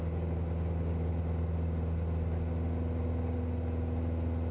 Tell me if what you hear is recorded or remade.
recorded